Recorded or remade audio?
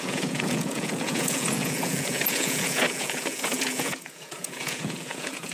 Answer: remade